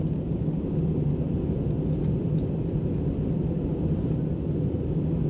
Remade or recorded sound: recorded